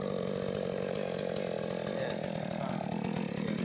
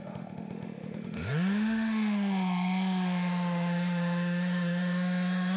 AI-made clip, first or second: second